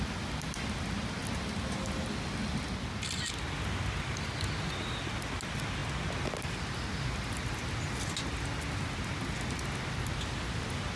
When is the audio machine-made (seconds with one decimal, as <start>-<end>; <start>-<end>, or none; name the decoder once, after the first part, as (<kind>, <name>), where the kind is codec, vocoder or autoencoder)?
none

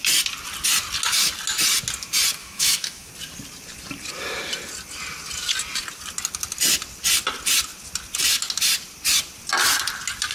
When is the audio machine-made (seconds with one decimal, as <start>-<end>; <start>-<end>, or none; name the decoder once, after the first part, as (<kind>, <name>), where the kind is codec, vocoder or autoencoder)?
2.4-3.1 (autoencoder, DAC-VAE)

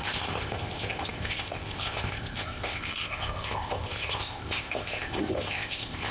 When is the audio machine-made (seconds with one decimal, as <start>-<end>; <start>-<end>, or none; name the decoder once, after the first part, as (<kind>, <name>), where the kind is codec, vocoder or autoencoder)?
0.0-6.1 (codec, ZipCodec)

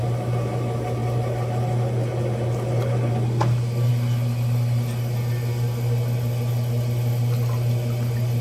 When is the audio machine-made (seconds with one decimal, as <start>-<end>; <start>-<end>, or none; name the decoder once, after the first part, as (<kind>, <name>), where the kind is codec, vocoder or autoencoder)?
none

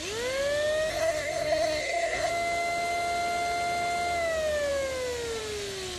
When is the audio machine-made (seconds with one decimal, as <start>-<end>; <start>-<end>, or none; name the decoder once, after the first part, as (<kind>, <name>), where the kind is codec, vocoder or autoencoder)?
0.9-2.3 (codec, SNAC)